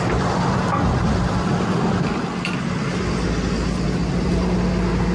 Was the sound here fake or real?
real